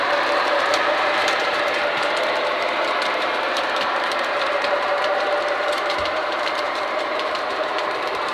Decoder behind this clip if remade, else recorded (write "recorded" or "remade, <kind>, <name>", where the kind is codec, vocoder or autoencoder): remade, vocoder, BigVGAN v2